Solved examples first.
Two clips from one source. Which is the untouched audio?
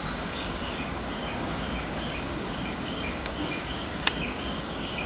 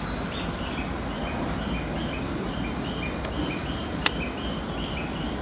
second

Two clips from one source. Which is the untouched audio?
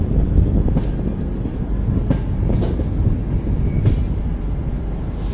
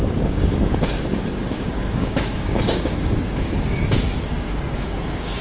first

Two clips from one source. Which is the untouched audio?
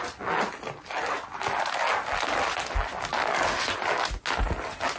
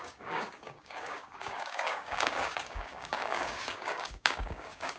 first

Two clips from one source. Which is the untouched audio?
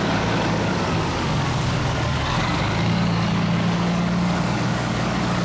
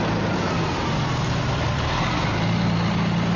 second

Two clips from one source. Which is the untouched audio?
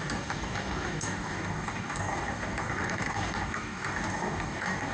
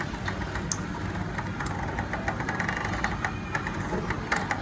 second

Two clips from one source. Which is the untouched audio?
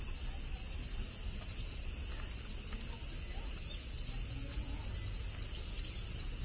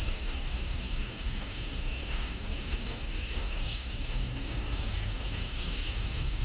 first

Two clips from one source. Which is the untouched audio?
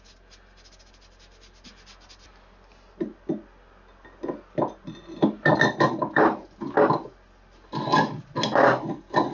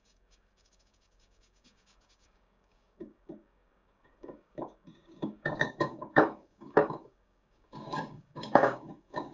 first